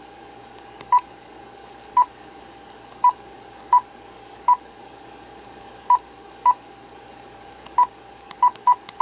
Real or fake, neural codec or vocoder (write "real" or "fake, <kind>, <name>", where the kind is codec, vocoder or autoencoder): fake, codec, DAC